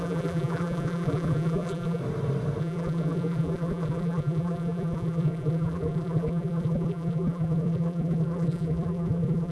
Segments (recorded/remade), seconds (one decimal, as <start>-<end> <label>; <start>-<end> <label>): 0.0-2.0 remade; 2.0-2.6 recorded; 2.6-9.5 remade